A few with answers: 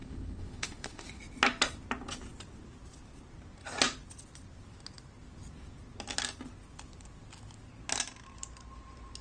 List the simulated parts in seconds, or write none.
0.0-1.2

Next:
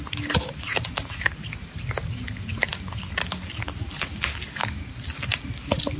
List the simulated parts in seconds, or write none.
none

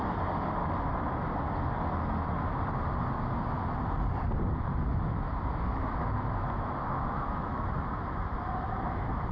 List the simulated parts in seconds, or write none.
0.6-1.3; 4.9-9.3

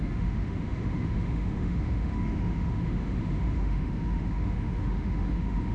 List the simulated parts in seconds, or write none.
0.0-5.7